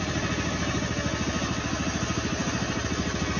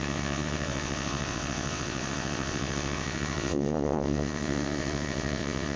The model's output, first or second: second